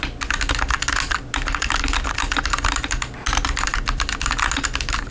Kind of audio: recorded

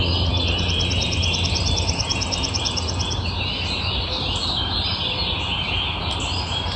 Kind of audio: recorded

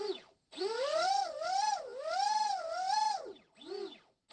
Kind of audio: recorded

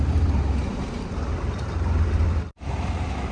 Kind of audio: recorded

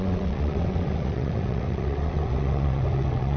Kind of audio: remade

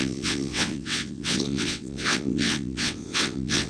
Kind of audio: remade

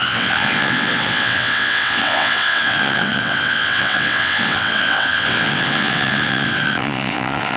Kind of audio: remade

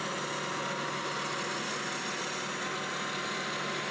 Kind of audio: recorded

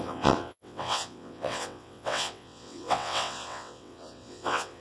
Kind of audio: remade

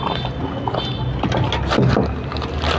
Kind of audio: recorded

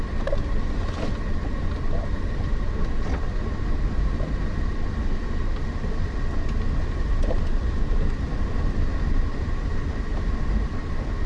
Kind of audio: recorded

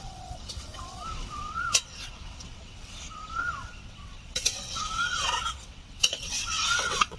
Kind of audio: remade